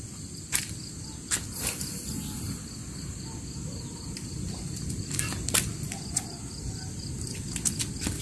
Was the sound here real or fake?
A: real